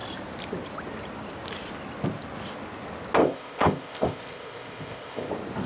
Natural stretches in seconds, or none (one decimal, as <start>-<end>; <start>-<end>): 0.0-3.2; 5.3-5.7